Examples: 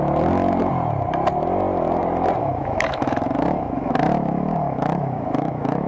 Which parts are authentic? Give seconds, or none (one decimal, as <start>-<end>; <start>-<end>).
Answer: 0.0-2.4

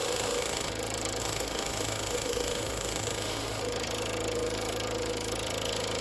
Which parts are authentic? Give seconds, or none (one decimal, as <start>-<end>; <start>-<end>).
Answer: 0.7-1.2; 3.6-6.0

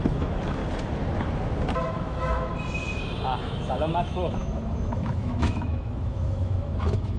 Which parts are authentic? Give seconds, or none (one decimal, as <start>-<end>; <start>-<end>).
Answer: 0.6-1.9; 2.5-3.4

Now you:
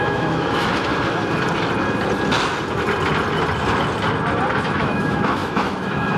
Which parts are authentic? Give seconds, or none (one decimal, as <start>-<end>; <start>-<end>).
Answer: 0.9-4.6

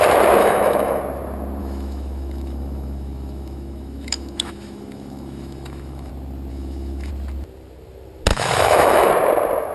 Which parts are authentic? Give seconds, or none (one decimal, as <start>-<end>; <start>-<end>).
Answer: 0.0-0.4; 1.0-1.6; 6.1-6.5; 7.1-8.3; 9.1-9.7

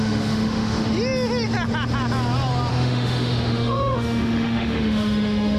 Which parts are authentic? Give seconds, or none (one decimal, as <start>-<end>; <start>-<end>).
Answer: 0.9-2.7

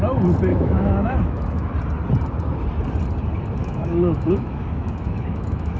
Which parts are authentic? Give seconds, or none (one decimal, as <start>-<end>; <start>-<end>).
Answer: 0.0-0.5; 1.7-3.6

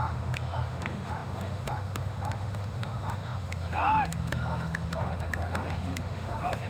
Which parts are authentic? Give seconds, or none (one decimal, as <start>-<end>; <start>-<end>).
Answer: none